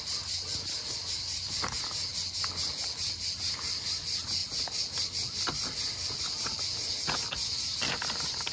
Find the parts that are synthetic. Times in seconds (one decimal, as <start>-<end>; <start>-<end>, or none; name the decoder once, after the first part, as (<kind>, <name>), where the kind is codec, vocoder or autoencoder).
none